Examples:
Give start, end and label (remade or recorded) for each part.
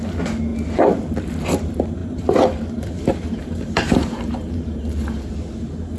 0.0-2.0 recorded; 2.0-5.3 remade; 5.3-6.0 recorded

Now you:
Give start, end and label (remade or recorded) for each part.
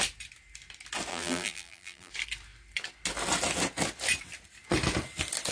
0.0-1.1 recorded; 1.1-2.1 remade; 2.1-5.5 recorded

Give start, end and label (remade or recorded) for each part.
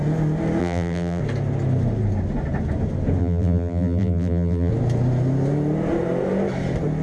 0.0-0.6 recorded; 0.6-1.2 remade; 1.2-3.2 recorded; 3.2-4.7 remade; 4.7-7.0 recorded